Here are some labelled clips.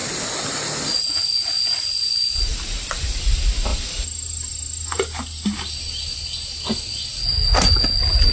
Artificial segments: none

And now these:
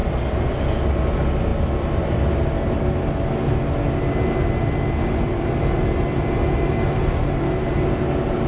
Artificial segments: 0.0-0.9 (vocoder, BigVGAN v2); 1.5-2.3

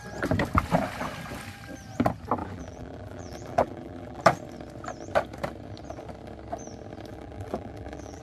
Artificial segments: 2.4-4.2 (vocoder, BigVGAN v2); 7.1-8.2

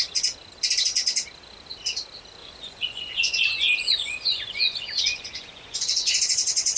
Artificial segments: 2.4-6.8 (vocoder, Vocos)

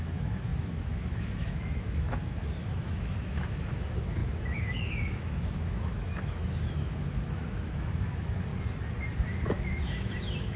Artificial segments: 0.0-8.5 (autoencoder, DAC-VAE); 9.4-10.6

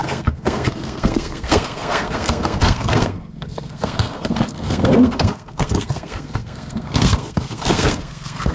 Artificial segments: 0.0-8.5 (codec, SNAC)

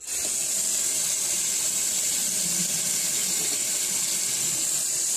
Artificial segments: none